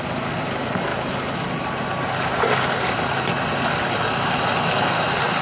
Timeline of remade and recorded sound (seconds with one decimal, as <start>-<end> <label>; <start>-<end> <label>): 0.0-5.4 recorded